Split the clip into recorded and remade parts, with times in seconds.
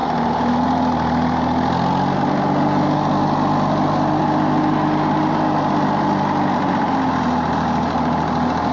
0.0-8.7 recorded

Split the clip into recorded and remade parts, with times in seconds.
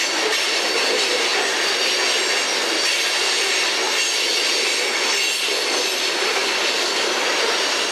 0.0-1.3 remade; 1.3-6.0 recorded; 6.0-6.4 remade; 6.4-7.3 recorded; 7.3-7.9 remade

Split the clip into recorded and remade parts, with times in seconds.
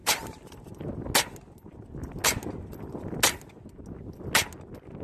0.0-0.9 remade; 0.9-5.0 recorded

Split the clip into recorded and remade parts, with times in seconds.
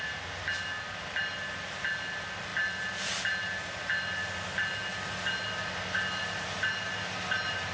0.0-7.7 recorded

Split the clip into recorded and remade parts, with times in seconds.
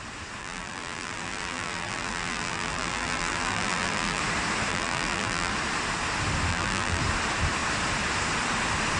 0.0-0.4 recorded; 0.4-4.2 remade; 4.2-4.7 recorded; 4.7-5.5 remade; 5.5-6.5 recorded; 6.5-7.0 remade; 7.0-9.0 recorded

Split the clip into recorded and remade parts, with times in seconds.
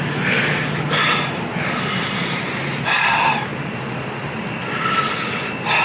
0.0-3.5 remade; 3.5-5.8 recorded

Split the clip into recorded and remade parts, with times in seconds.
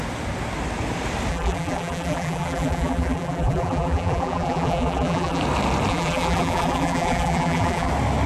0.0-1.3 recorded; 1.3-5.4 remade; 5.4-5.9 recorded; 5.9-7.9 remade; 7.9-8.3 recorded